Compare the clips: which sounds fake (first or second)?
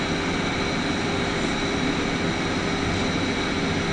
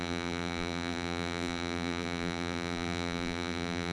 second